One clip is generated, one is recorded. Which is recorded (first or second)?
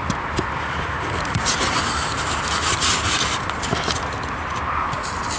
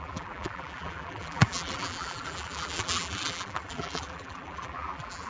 first